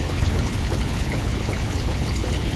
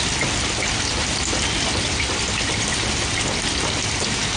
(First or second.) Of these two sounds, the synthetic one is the first